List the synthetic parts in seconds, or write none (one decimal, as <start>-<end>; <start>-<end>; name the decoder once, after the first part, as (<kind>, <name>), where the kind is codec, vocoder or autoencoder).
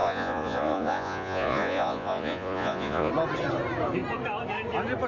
0.0-3.1 (vocoder, Vocos)